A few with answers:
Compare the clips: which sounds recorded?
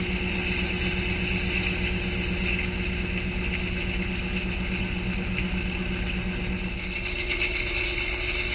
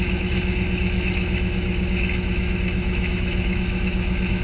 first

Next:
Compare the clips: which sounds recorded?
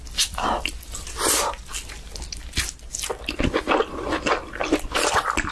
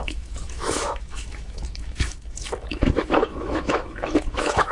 first